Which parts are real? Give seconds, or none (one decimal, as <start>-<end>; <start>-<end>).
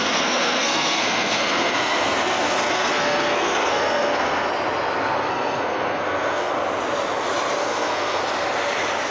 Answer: 4.5-5.3; 6.5-7.6; 8.2-9.1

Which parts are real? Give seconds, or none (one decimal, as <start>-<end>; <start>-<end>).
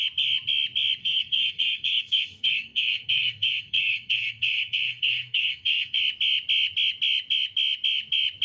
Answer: 0.0-1.0; 6.0-8.4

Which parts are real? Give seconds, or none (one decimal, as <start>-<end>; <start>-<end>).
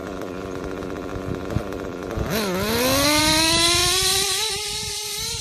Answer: 0.0-5.4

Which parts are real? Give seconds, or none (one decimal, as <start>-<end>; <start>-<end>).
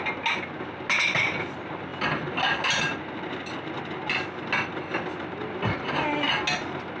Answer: 0.0-7.0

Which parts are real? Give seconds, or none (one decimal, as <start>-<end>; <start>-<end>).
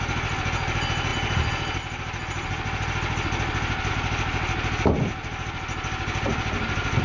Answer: 0.0-7.0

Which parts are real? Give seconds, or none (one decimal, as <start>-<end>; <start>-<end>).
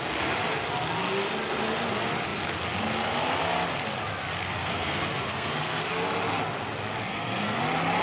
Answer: 0.0-4.6; 5.8-7.1; 7.6-8.0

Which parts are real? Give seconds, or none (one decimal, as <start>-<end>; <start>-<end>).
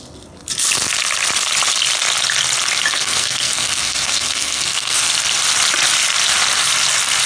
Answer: 0.0-2.9; 5.1-7.3